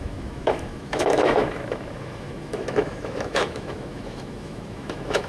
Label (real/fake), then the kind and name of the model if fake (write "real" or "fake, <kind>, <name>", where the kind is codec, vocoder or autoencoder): fake, autoencoder, DAC-VAE